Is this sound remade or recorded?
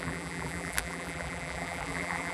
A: remade